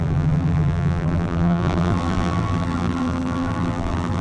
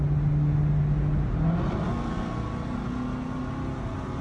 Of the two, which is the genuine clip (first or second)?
second